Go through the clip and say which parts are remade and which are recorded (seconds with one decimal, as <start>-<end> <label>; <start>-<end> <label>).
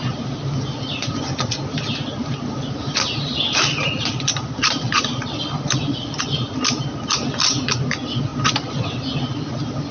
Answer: 0.0-9.9 recorded